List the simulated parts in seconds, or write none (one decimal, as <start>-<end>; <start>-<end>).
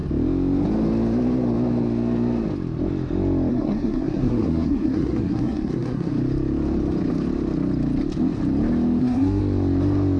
3.5-6.1; 9.0-9.4